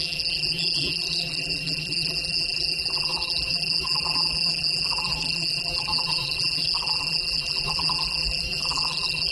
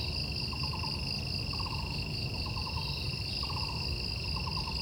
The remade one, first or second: first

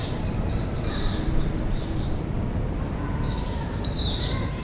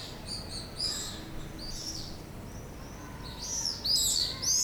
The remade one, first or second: first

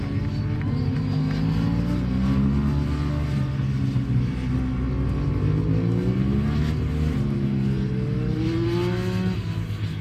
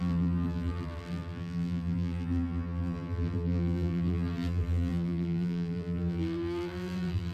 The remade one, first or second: second